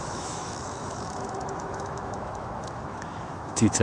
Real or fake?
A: fake